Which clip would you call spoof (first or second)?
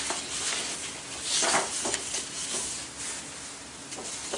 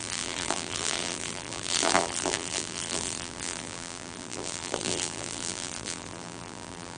second